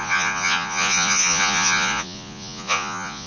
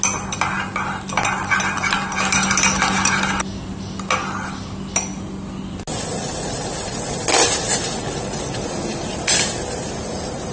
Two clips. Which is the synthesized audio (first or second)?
first